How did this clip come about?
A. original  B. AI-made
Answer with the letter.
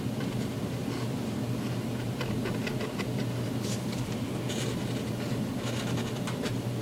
A